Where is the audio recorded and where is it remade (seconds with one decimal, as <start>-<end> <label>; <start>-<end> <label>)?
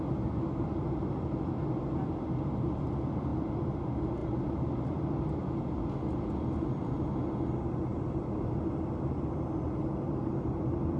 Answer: 0.0-11.0 recorded